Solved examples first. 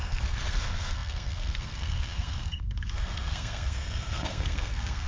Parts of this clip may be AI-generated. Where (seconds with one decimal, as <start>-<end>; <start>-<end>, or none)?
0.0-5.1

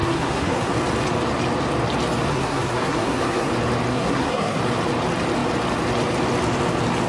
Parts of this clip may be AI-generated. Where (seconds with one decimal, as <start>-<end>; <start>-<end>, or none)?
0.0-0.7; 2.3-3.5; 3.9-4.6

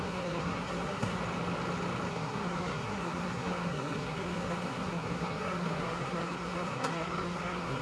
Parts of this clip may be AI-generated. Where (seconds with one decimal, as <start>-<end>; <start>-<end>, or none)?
0.0-1.2; 2.1-7.8

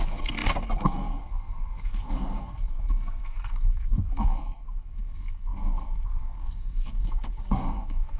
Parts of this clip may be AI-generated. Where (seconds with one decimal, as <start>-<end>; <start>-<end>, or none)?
0.0-8.2

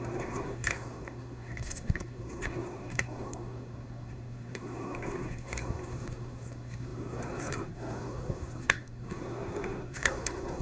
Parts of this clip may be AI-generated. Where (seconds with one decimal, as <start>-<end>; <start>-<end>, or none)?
0.0-10.6

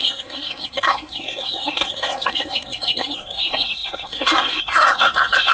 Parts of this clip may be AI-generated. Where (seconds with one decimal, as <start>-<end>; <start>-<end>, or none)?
0.0-5.5

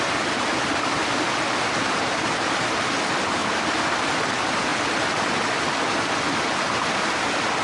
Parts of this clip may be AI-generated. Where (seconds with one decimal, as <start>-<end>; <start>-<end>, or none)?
none

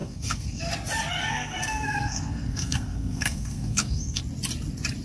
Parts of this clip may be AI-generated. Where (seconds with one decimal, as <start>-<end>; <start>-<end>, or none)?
0.0-0.6; 1.2-4.2